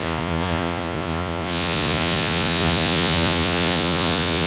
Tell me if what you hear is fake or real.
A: fake